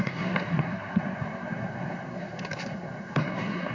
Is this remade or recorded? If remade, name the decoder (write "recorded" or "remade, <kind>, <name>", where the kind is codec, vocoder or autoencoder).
remade, codec, SNAC